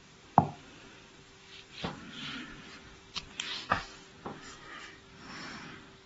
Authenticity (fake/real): real